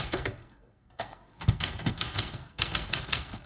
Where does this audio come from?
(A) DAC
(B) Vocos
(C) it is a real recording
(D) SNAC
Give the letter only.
D